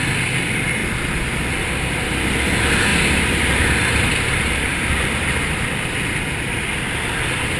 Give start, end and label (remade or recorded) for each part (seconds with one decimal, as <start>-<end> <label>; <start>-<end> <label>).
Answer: 0.0-0.8 recorded; 0.8-1.9 remade; 1.9-2.9 recorded; 2.9-6.5 remade; 6.5-7.6 recorded